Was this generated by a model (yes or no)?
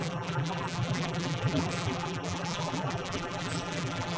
yes